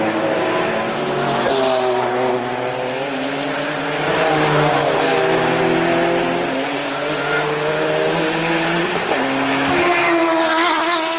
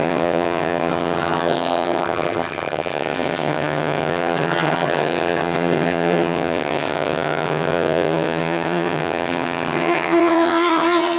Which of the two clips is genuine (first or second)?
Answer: first